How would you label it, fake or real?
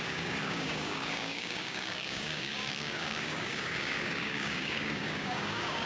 fake